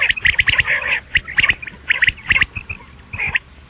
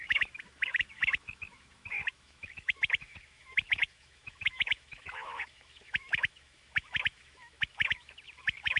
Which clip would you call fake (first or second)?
second